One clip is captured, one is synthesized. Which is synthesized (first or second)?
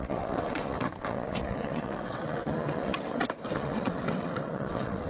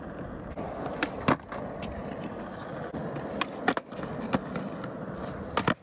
first